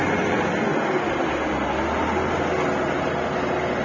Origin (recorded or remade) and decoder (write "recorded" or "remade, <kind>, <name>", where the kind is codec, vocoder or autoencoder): recorded